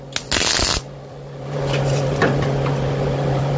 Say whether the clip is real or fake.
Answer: real